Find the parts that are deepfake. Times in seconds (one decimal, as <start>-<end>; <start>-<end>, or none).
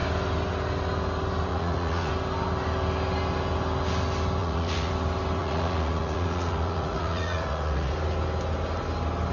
1.5-2.1; 4.4-4.9; 5.4-7.9